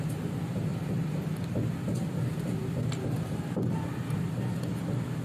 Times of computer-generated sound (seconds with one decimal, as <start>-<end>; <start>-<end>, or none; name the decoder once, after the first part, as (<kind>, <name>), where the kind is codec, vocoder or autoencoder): none